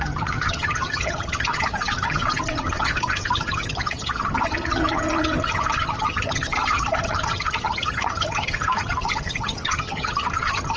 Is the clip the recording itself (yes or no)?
no